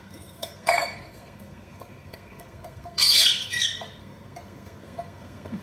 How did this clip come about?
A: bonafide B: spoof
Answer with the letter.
B